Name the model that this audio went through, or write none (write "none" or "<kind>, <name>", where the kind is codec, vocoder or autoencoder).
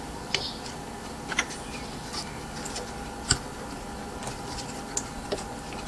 none